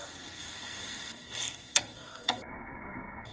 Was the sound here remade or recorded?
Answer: remade